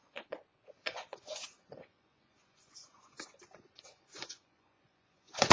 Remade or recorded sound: remade